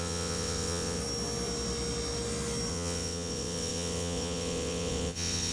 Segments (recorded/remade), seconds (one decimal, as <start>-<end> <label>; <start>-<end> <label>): 0.0-1.0 remade; 1.0-2.7 recorded; 2.7-5.5 remade